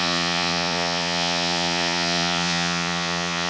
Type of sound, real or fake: fake